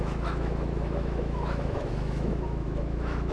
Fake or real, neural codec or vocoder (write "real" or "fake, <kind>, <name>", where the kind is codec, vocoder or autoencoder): fake, autoencoder, DAC-VAE